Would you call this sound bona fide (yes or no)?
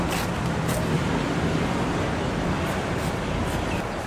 no